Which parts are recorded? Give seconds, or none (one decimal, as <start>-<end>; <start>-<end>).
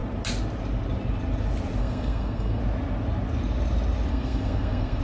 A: 0.0-1.8; 2.6-4.1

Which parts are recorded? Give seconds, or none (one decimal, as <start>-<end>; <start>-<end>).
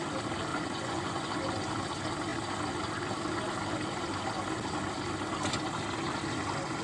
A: 0.0-0.5; 1.3-6.8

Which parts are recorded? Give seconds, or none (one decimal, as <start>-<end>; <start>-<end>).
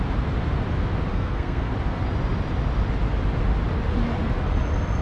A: 0.0-1.1; 1.7-5.0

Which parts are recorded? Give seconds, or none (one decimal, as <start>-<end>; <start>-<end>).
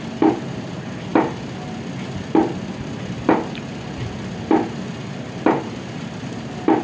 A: 0.0-6.8